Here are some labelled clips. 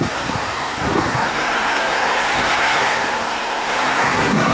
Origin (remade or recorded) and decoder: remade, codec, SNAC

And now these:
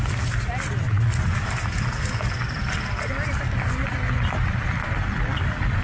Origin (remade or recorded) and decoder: recorded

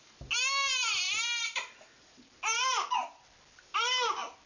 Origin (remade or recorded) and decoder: recorded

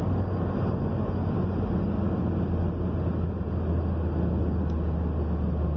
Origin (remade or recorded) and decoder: recorded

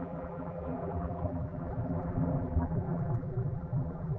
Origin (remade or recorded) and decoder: remade, vocoder, BigVGAN v2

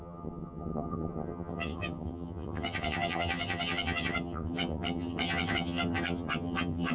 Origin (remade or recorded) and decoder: remade, vocoder, HiFi-GAN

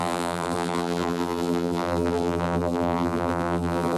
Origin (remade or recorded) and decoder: remade, vocoder, BigVGAN v2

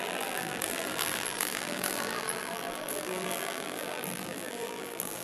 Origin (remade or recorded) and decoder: remade, vocoder, BigVGAN v2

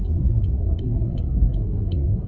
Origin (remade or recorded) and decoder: remade, codec, SNAC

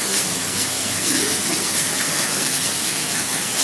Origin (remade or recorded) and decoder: remade, codec, SNAC